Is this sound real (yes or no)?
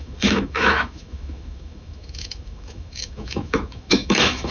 no